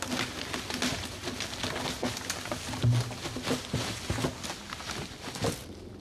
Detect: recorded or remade recorded